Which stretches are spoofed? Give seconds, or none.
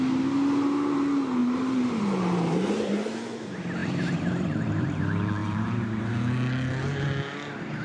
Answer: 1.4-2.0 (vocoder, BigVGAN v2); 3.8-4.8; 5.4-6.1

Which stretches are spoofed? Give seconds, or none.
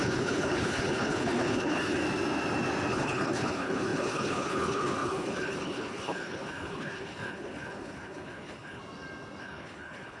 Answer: 0.0-2.0 (codec, HILCodec); 2.9-8.8; 9.4-10.2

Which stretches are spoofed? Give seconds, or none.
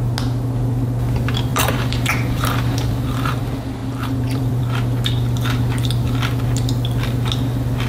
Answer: 1.5-3.4 (vocoder, BigVGAN v2); 3.8-4.6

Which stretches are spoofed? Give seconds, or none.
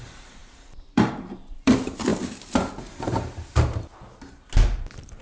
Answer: 0.0-2.1 (vocoder, BigVGAN v2); 3.0-3.7; 4.8-5.2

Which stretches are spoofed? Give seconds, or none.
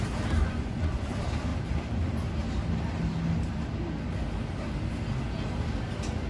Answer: 0.4-1.1 (vocoder, Vocos)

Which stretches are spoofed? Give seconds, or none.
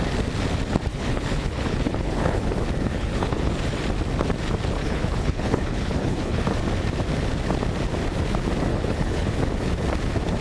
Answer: 0.9-2.5 (codec, HILCodec); 2.9-3.5; 4.8-6.4; 8.7-9.3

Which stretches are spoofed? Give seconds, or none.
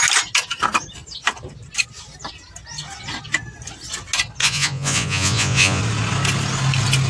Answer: 4.4-5.8 (vocoder, Vocos)